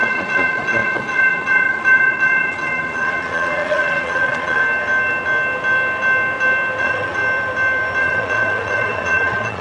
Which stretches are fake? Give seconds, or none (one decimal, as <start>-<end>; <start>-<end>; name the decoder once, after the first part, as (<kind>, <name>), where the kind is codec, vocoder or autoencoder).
0.0-4.6 (vocoder, Vocos); 6.8-7.2; 8.0-9.6